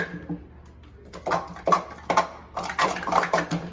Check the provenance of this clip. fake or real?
real